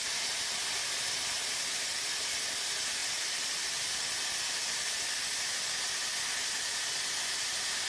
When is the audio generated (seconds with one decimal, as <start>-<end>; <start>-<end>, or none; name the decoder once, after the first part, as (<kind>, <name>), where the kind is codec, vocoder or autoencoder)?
3.0-3.6 (vocoder, BigVGAN v2)